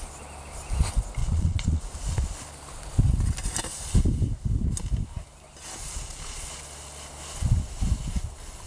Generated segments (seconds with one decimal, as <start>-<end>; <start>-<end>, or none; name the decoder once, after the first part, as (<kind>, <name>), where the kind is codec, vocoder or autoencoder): 1.2-1.8 (vocoder, Vocos); 5.8-6.6